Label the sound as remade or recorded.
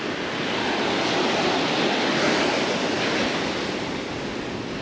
recorded